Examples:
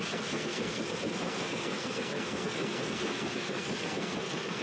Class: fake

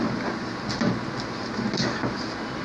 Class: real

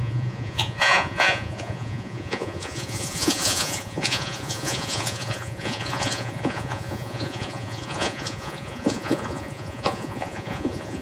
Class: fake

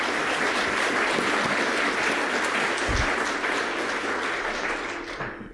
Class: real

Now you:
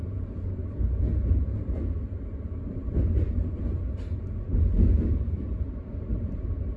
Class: fake